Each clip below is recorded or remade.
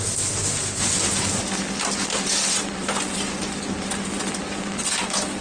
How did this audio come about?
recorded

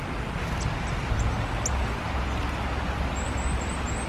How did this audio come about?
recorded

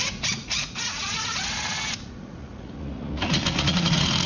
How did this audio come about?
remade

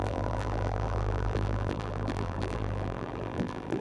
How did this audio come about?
remade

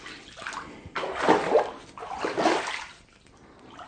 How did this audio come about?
recorded